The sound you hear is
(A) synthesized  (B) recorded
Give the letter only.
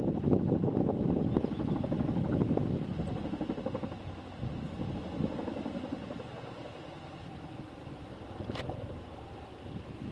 B